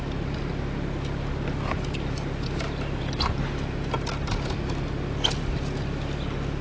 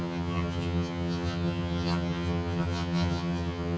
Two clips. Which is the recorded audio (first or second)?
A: first